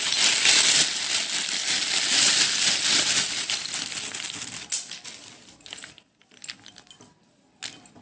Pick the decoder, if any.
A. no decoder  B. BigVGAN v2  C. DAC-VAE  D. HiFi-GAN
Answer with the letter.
A